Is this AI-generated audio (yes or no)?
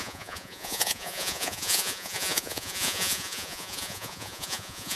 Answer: yes